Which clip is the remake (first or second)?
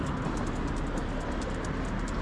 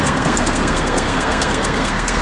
second